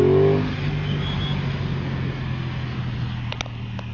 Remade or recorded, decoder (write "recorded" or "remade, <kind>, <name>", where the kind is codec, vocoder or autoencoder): recorded